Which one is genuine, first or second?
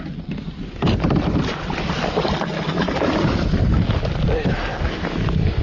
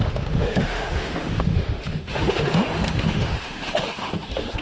first